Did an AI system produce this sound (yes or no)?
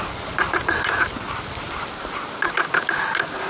no